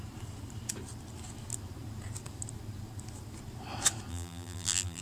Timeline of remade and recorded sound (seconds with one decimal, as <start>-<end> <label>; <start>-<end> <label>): 0.0-4.1 recorded; 4.1-5.0 remade